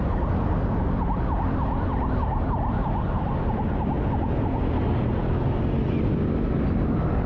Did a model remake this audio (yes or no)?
no